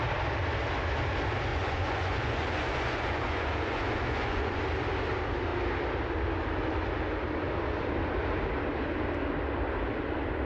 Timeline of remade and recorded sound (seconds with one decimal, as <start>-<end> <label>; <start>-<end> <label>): 0.0-1.5 recorded; 1.5-4.6 remade; 4.6-10.5 recorded